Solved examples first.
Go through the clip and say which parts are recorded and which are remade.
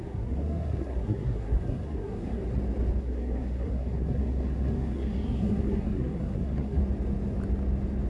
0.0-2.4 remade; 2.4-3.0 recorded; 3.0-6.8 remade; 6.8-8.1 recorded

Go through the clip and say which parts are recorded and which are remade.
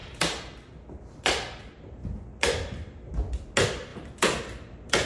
0.0-1.0 remade; 1.0-2.0 recorded; 2.0-3.1 remade; 3.1-5.1 recorded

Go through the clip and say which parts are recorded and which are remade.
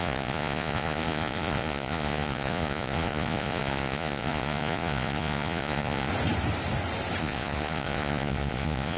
0.0-6.1 remade; 6.1-7.2 recorded; 7.2-9.0 remade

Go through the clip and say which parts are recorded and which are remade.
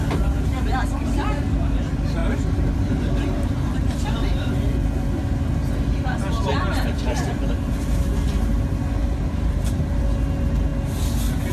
0.0-2.2 recorded; 2.2-4.5 remade; 4.5-9.0 recorded; 9.0-10.0 remade; 10.0-11.5 recorded